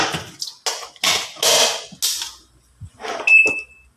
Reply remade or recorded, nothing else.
recorded